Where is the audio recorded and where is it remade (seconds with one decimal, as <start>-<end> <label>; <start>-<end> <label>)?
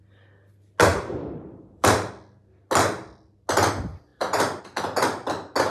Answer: 0.0-0.9 recorded; 0.9-2.1 remade; 2.1-4.1 recorded; 4.1-4.6 remade; 4.6-5.7 recorded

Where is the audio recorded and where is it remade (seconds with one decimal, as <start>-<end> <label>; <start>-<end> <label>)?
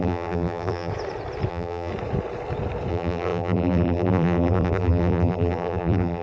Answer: 0.0-0.9 remade; 0.9-1.5 recorded; 1.5-1.9 remade; 1.9-2.9 recorded; 2.9-6.2 remade